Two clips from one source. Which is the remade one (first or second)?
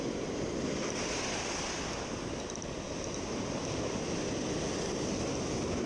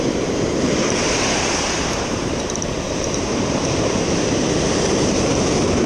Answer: second